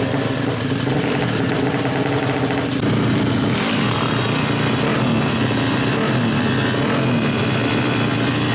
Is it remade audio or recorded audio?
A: recorded